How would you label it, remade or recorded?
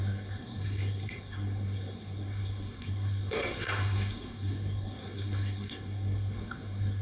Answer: remade